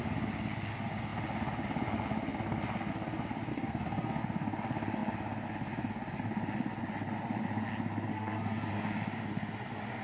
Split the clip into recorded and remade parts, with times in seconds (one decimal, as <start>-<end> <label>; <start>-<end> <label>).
0.0-3.5 recorded; 3.5-4.2 remade; 4.2-8.1 recorded; 8.1-8.7 remade; 8.7-10.0 recorded